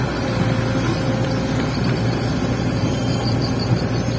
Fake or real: real